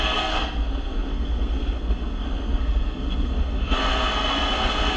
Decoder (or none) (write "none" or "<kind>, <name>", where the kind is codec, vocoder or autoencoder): codec, SNAC